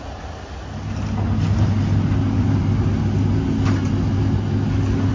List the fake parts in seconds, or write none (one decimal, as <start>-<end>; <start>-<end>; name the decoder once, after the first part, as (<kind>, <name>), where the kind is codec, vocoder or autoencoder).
none